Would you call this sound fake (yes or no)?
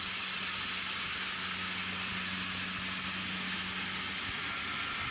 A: no